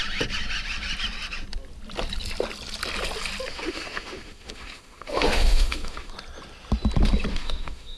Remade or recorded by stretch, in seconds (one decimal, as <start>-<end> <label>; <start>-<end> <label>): 0.0-3.5 recorded; 3.5-6.1 remade; 6.1-7.3 recorded; 7.3-8.0 remade